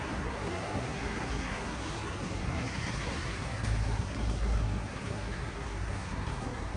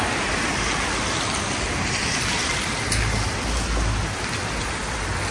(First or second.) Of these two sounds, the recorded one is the second